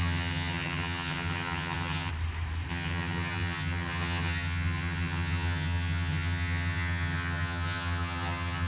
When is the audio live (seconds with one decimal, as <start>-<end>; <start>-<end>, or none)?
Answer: 2.1-2.7